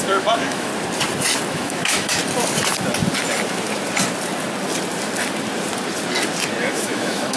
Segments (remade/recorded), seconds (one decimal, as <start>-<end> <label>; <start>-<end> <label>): 0.0-0.7 remade; 0.7-1.5 recorded; 1.5-2.2 remade; 2.2-6.6 recorded; 6.6-7.4 remade